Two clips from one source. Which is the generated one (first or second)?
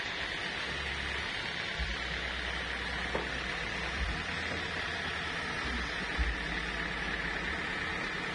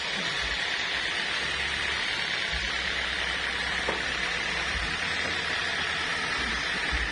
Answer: second